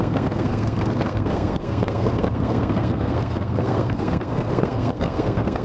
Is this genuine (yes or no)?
no